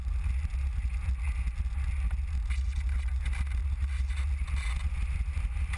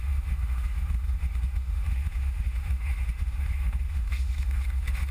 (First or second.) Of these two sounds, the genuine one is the first